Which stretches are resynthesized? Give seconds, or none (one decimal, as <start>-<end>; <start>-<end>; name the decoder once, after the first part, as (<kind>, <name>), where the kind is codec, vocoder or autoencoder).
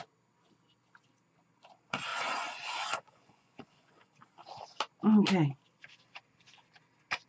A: 2.1-4.1 (vocoder, Vocos)